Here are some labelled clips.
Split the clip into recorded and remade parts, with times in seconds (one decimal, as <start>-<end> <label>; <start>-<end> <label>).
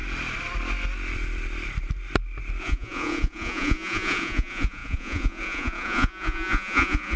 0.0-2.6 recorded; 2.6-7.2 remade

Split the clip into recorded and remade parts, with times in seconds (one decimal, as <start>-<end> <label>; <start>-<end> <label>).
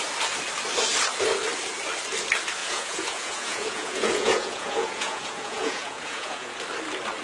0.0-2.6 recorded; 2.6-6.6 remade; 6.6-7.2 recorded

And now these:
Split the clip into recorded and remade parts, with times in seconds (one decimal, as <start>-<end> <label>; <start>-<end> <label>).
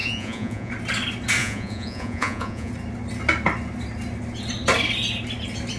0.0-0.7 remade; 0.7-1.4 recorded; 1.4-2.7 remade; 2.7-5.8 recorded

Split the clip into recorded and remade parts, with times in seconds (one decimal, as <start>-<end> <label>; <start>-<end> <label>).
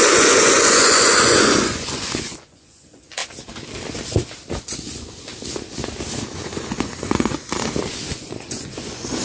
0.0-3.2 remade; 3.2-4.6 recorded; 4.6-5.3 remade; 5.3-6.3 recorded; 6.3-7.4 remade; 7.4-8.1 recorded; 8.1-9.2 remade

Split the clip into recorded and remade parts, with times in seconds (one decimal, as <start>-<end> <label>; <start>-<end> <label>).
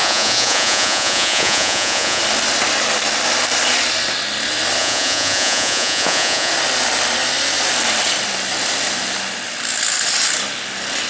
0.0-2.2 remade; 2.2-4.8 recorded; 4.8-6.5 remade; 6.5-11.1 recorded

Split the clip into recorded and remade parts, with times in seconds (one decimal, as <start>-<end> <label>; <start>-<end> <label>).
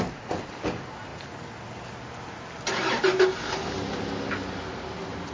0.0-5.3 recorded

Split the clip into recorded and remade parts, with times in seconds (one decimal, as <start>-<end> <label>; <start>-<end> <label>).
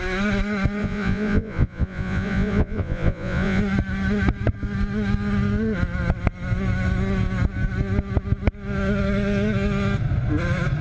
0.0-0.8 recorded; 0.8-3.6 remade; 3.6-10.8 recorded